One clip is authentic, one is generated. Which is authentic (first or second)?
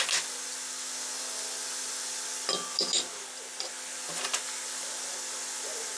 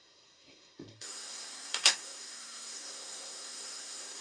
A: first